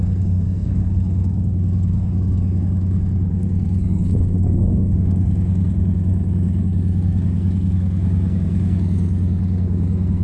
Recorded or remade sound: remade